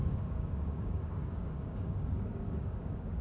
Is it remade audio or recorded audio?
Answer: remade